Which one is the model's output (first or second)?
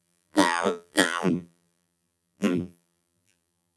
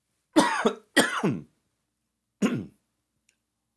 first